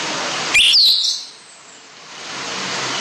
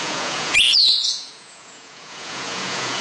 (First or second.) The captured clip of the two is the first